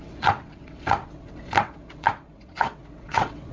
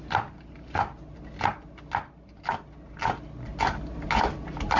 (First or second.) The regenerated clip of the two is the first